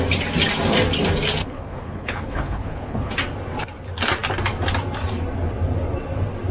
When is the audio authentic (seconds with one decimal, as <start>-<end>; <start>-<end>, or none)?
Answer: 0.0-1.4; 3.1-6.5